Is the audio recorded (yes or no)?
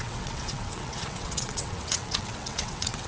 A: no